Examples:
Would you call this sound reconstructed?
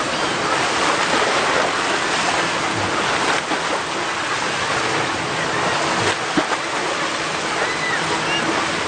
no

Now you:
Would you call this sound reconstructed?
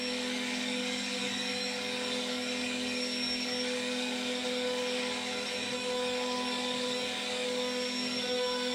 yes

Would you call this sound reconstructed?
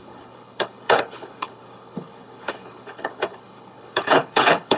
yes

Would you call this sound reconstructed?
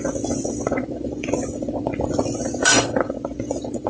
yes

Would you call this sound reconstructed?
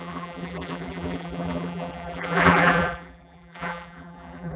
yes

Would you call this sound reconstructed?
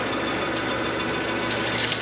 no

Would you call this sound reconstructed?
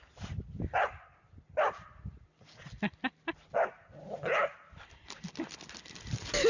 no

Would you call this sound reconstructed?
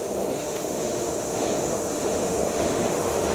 yes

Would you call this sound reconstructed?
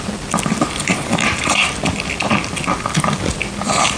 no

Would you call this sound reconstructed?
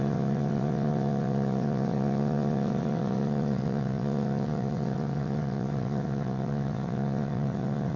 yes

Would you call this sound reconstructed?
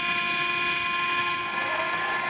no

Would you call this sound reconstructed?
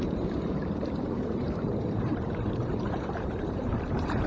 yes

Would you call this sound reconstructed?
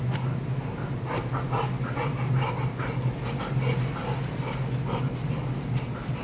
no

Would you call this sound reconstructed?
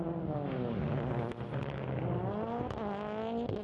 no